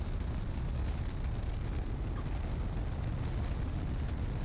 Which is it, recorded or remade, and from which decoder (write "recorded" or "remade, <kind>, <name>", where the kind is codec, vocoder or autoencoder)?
recorded